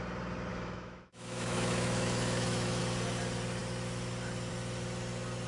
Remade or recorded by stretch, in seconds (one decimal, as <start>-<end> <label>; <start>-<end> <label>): 0.0-0.5 recorded; 0.5-2.8 remade; 2.8-5.5 recorded